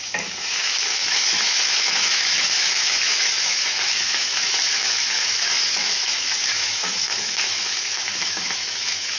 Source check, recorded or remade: remade